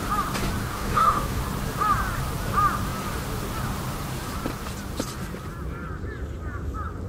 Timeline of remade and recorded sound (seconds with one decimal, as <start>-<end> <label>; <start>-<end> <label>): 0.0-0.6 recorded; 0.6-1.4 remade; 1.4-7.1 recorded